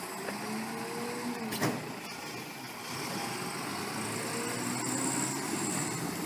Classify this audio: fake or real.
real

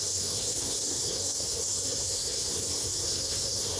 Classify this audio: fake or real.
fake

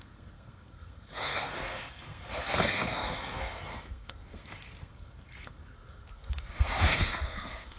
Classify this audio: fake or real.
fake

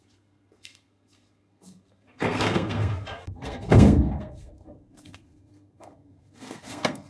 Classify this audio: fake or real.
fake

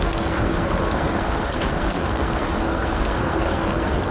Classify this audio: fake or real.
fake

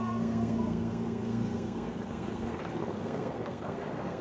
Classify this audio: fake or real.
fake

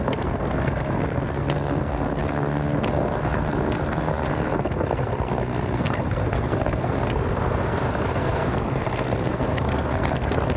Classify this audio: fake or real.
fake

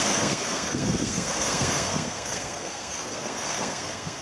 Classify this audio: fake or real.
fake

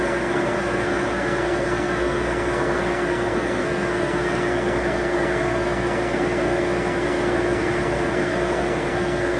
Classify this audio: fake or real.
fake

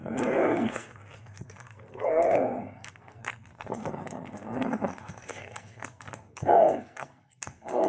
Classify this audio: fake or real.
fake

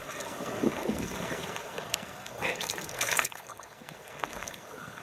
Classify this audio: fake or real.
fake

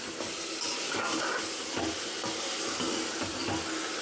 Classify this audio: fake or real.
real